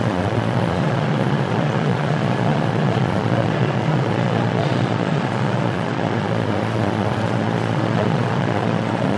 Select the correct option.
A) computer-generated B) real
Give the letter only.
A